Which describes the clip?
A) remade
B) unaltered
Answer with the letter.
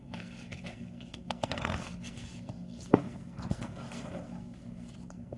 A